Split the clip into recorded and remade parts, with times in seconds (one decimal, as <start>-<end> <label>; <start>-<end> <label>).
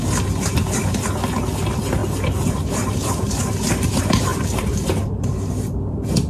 0.0-2.0 recorded; 2.0-3.4 remade; 3.4-4.3 recorded; 4.3-6.3 remade